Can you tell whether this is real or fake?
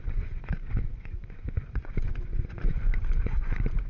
fake